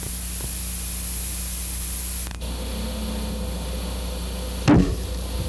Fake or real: real